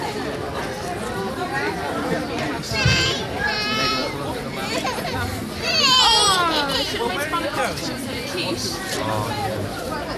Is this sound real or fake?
fake